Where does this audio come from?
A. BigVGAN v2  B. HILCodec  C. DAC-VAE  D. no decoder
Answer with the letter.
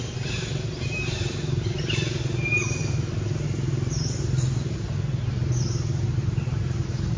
A